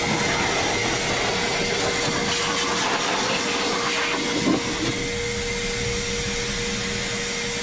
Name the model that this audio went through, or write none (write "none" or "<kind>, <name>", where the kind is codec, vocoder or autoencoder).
none